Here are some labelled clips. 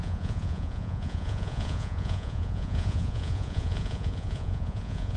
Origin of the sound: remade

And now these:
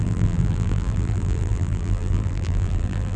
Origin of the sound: remade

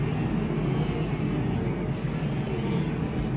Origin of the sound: recorded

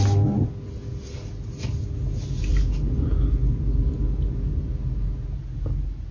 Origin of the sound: recorded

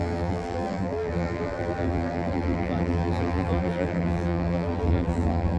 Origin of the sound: remade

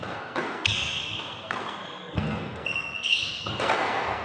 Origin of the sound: remade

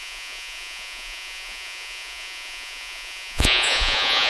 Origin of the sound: remade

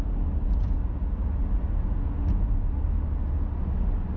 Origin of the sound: recorded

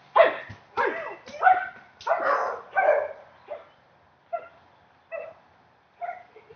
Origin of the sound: recorded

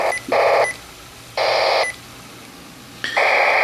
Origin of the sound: recorded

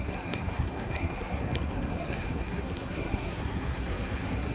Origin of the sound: remade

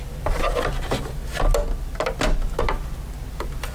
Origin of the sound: recorded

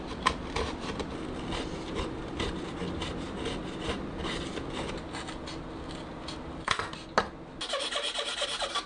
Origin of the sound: recorded